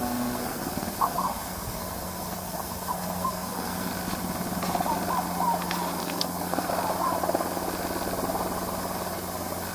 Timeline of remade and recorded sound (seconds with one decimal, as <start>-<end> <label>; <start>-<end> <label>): 0.0-3.9 remade; 3.9-6.0 recorded; 6.0-6.7 remade; 6.7-9.7 recorded